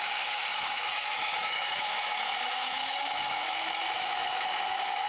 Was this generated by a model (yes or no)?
yes